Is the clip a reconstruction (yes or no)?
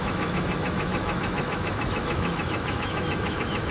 yes